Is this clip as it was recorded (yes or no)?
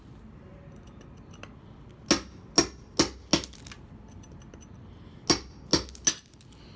yes